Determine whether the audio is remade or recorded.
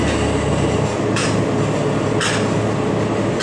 recorded